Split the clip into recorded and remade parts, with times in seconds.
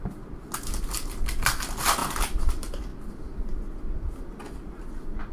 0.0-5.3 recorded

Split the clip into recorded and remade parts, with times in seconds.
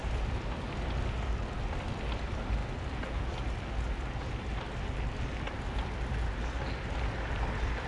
0.0-2.6 remade; 2.6-7.0 recorded; 7.0-7.9 remade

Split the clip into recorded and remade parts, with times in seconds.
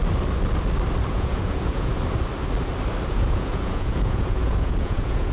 0.0-1.1 recorded; 1.1-1.9 remade; 1.9-3.1 recorded; 3.1-5.3 remade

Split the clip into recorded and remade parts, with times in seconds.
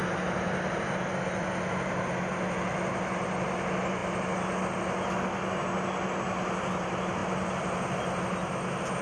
0.0-9.0 recorded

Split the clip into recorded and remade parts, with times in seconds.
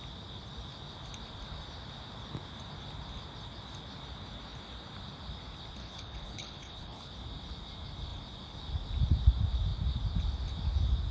0.0-5.8 recorded; 5.8-7.1 remade; 7.1-11.1 recorded